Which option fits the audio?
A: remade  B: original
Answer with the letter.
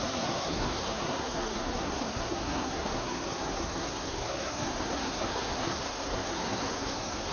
A